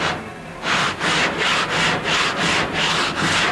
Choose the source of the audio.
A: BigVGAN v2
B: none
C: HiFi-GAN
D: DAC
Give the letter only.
B